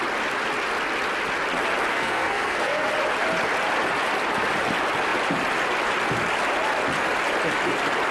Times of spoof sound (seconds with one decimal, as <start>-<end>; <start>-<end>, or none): 1.9-2.9